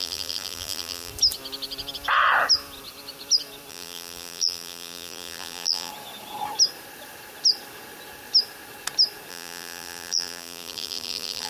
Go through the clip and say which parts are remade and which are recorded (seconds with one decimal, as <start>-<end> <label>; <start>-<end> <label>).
0.0-1.1 remade; 1.1-3.7 recorded; 3.7-5.9 remade; 5.9-9.3 recorded; 9.3-11.5 remade